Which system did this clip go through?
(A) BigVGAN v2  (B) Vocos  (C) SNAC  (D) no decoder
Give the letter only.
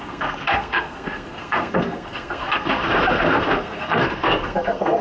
C